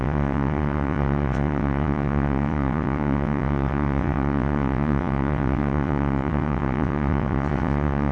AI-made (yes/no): yes